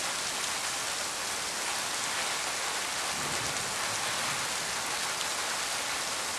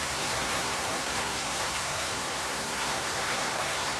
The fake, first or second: second